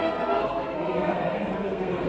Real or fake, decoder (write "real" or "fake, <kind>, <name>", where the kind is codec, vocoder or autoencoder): fake, codec, SNAC